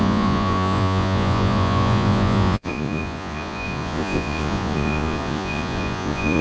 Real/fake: fake